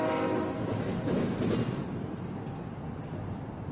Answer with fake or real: real